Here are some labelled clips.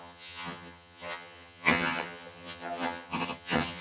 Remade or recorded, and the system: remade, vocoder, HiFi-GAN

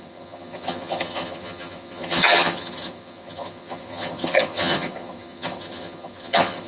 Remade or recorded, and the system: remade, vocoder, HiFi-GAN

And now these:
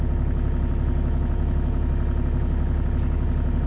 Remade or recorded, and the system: recorded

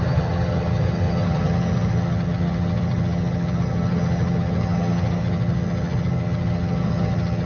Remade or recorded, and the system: remade, vocoder, HiFi-GAN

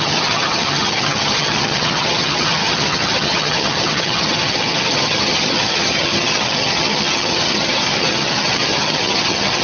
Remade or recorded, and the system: remade, vocoder, HiFi-GAN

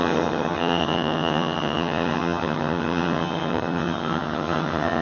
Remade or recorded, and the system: remade, vocoder, HiFi-GAN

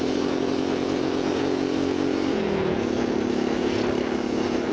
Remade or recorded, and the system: recorded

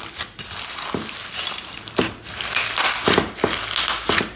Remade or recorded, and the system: recorded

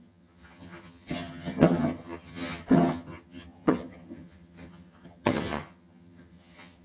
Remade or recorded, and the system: remade, vocoder, HiFi-GAN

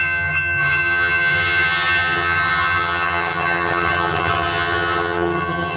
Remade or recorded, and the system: remade, vocoder, HiFi-GAN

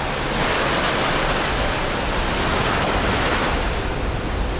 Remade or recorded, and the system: recorded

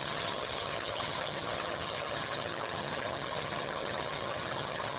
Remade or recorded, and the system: remade, vocoder, HiFi-GAN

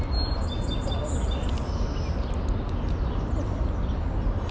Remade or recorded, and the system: recorded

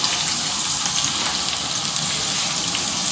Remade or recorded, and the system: recorded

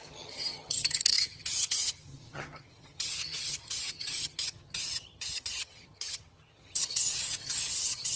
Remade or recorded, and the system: remade, vocoder, HiFi-GAN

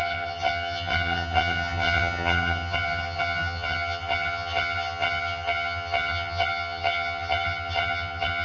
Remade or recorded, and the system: remade, vocoder, HiFi-GAN